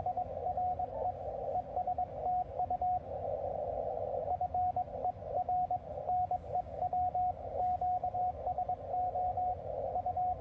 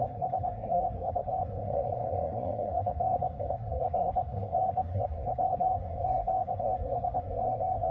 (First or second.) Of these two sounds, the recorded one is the first